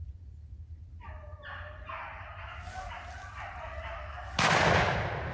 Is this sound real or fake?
real